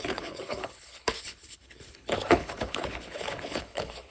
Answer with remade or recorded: remade